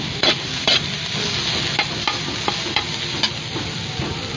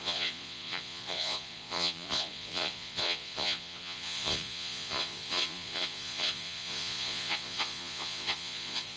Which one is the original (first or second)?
first